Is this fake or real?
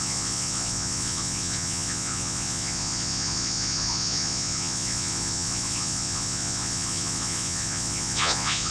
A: fake